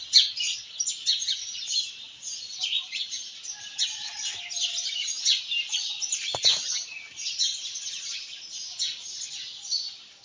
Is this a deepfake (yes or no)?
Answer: no